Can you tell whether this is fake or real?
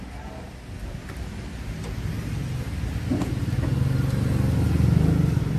real